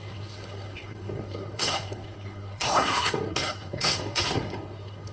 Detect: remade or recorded remade